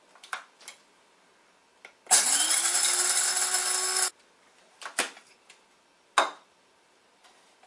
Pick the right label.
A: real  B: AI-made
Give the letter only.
A